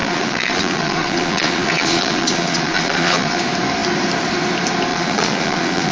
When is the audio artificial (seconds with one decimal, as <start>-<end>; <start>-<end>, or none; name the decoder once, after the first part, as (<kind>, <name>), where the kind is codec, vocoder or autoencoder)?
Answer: 0.0-3.4 (vocoder, Vocos); 4.9-5.9

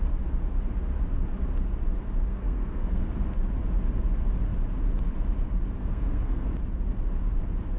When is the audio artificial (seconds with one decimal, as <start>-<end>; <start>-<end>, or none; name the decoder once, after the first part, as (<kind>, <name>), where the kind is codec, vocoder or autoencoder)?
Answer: 2.3-3.0 (codec, SNAC); 5.8-6.5

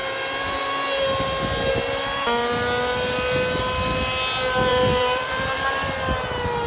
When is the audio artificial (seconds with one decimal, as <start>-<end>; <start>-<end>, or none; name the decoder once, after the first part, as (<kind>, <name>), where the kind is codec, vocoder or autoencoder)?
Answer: 0.0-0.6 (vocoder, BigVGAN v2); 4.7-5.7

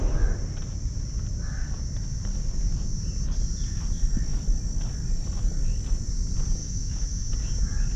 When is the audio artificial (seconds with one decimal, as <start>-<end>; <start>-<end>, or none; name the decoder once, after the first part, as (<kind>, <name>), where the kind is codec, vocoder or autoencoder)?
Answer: 6.6-7.3 (autoencoder, DAC-VAE)

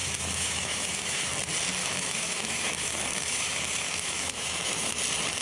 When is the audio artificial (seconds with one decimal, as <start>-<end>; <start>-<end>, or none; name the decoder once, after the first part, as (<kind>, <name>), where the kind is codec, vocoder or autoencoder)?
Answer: 0.0-1.3 (autoencoder, DAC-VAE); 1.8-5.0

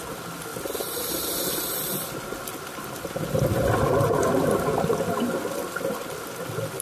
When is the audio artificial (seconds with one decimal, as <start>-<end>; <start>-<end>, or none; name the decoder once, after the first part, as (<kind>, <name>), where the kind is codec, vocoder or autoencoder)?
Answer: none